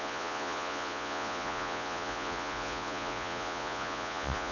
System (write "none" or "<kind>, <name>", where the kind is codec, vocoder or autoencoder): vocoder, Vocos